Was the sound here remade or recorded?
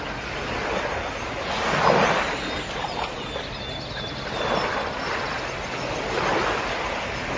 recorded